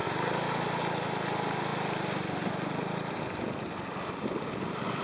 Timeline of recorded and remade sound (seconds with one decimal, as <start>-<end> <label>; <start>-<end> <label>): 0.0-5.0 recorded